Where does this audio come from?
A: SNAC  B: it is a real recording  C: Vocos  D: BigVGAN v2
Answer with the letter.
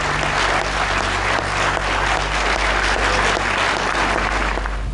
B